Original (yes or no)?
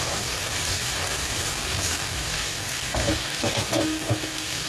no